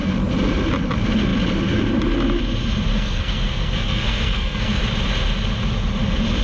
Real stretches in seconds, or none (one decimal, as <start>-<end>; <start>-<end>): 0.0-2.9; 4.8-6.4